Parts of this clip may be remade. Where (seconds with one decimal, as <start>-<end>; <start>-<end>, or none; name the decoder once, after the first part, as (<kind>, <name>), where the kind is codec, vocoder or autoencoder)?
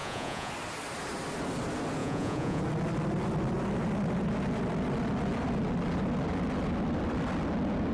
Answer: 0.0-0.5 (vocoder, Vocos); 2.0-2.6